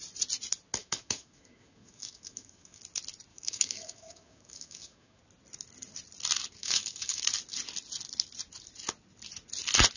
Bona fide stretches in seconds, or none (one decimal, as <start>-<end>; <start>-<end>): 0.0-0.8; 2.8-3.3; 5.2-6.6; 7.2-10.0